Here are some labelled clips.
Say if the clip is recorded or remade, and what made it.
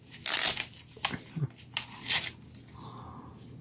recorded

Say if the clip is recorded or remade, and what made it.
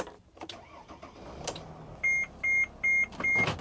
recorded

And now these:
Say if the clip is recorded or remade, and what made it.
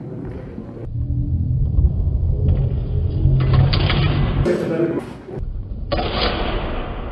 recorded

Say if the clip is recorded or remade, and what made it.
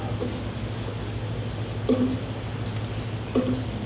recorded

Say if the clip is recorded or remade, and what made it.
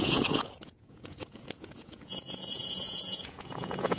remade, vocoder, Vocos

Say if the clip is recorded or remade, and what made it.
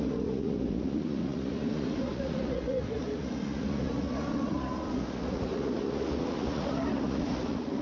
remade, vocoder, Vocos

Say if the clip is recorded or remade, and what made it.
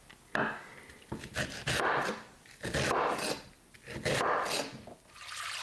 recorded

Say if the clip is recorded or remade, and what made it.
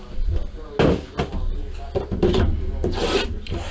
recorded